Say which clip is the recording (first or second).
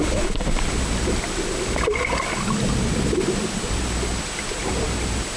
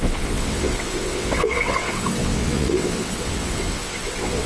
first